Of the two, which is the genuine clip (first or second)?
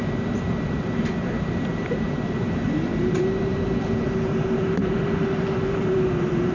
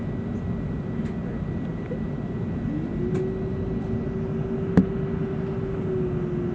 second